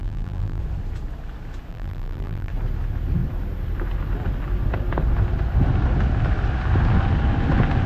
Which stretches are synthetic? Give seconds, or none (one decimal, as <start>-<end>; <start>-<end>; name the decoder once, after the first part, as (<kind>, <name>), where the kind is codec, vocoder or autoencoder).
0.0-0.6 (vocoder, BigVGAN v2); 1.7-2.5